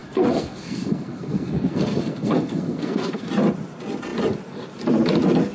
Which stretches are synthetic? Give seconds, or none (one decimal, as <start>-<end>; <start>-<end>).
0.0-3.3